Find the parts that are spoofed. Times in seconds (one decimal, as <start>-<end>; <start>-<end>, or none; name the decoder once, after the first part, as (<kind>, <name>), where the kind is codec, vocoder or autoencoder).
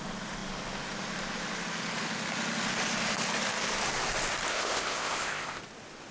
4.5-5.6 (codec, ZipCodec)